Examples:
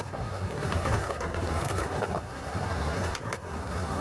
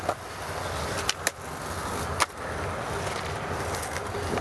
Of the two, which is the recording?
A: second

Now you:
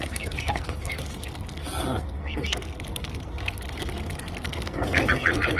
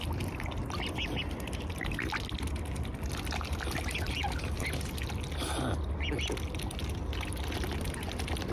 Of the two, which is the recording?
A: second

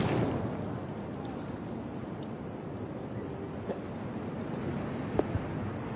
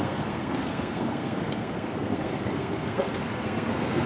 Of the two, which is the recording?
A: first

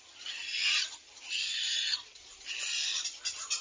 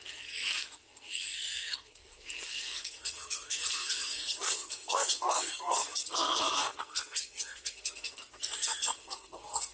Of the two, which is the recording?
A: first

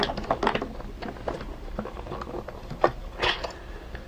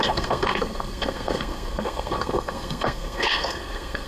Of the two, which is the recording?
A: first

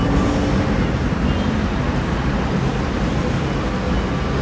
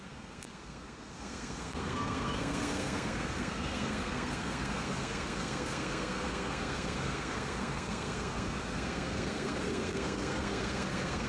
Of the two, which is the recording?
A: first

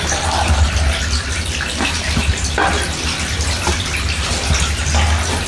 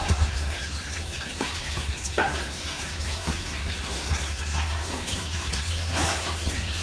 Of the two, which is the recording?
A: first